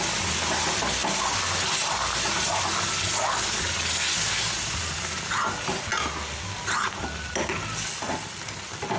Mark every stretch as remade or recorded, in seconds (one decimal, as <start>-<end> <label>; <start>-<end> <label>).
0.0-9.0 recorded